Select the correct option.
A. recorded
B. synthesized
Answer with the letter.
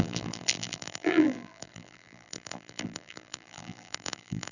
B